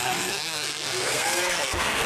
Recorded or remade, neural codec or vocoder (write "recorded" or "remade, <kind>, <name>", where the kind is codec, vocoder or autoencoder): remade, codec, SNAC